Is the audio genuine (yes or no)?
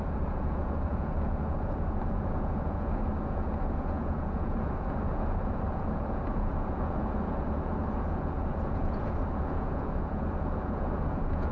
no